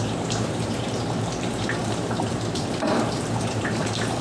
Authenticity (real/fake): fake